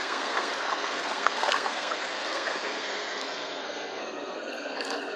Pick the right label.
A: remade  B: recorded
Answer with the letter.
A